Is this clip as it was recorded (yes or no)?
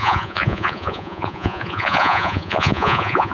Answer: no